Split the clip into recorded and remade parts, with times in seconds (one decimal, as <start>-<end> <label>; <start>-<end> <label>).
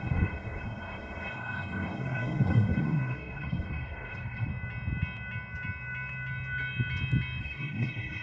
0.0-4.5 remade; 4.5-7.4 recorded; 7.4-8.2 remade